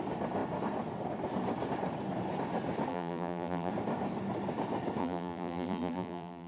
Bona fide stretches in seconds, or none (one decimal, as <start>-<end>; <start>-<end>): 0.0-2.9; 3.7-5.0